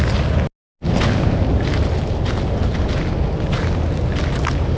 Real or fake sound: real